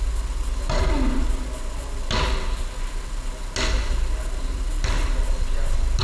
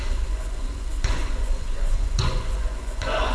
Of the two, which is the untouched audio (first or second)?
first